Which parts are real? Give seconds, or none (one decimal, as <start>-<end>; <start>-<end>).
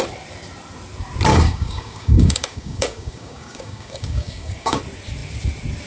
0.0-1.3; 4.8-5.9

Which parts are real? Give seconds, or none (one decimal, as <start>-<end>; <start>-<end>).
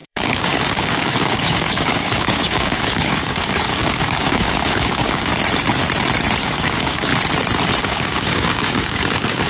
5.3-6.4; 7.1-7.8